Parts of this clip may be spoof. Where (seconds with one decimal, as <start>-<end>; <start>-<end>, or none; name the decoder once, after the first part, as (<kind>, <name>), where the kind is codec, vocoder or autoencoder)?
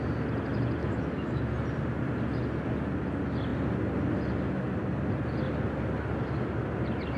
0.8-1.4 (autoencoder, DAC-VAE)